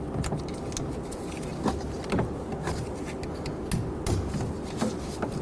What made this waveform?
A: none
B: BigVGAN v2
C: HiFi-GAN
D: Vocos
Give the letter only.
A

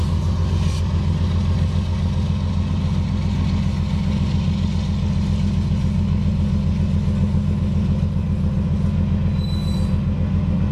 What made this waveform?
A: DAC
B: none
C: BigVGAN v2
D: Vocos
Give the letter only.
B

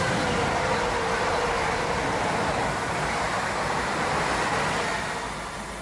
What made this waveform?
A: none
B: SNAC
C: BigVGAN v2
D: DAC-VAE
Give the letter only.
A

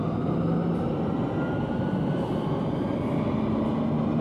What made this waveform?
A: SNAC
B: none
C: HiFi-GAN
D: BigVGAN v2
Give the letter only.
B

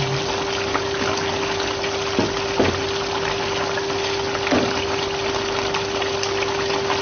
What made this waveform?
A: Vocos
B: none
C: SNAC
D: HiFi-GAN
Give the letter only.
B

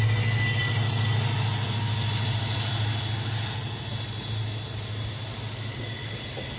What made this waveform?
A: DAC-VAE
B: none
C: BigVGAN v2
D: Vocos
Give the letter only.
B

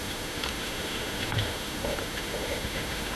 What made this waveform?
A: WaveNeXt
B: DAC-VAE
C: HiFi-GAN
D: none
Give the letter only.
B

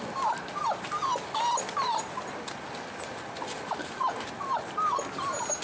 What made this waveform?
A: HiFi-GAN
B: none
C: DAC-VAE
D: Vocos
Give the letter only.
B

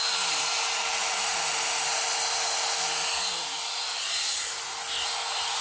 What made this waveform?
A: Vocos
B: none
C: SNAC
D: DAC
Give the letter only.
B